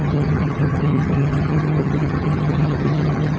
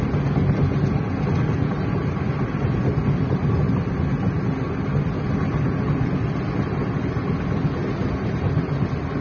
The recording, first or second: second